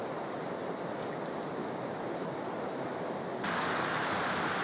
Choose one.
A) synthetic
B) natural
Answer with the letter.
B